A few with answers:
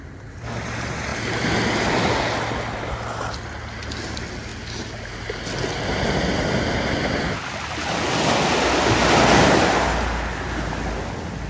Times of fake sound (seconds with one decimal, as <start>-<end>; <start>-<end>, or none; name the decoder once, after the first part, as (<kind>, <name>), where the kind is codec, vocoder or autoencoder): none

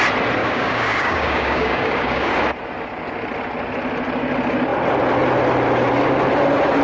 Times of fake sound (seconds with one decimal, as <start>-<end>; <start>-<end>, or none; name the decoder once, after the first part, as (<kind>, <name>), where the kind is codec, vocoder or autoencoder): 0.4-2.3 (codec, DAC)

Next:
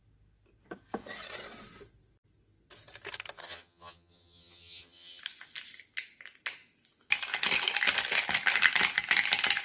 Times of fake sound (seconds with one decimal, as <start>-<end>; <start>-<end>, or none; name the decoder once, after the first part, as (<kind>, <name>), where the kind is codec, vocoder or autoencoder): 3.4-5.2 (vocoder, HiFi-GAN)

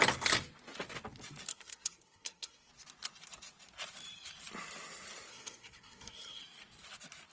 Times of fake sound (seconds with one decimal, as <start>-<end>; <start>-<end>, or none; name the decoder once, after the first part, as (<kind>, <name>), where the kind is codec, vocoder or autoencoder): 1.5-2.7 (codec, SNAC); 5.3-6.4

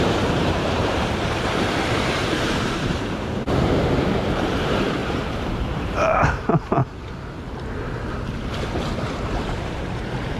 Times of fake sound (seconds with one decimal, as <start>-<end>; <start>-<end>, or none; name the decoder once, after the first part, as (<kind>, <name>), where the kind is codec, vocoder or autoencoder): 0.0-6.8 (vocoder, BigVGAN v2); 8.9-10.4

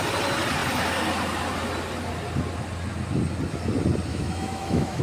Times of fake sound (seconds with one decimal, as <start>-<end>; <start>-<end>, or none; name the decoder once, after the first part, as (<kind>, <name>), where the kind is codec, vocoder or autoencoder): 4.1-5.0 (autoencoder, DAC-VAE)